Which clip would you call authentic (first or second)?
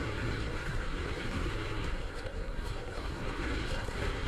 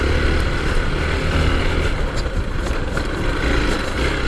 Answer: second